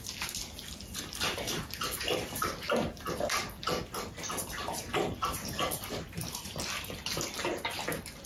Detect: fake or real real